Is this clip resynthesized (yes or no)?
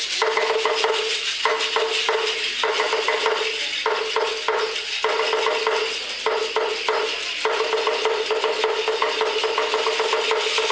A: no